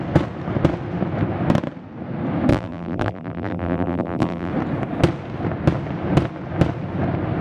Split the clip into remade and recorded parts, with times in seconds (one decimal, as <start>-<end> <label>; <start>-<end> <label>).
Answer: 0.0-2.5 recorded; 2.5-4.5 remade; 4.5-7.4 recorded